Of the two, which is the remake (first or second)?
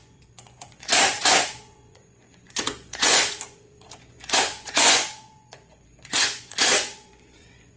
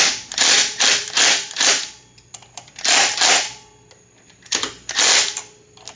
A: first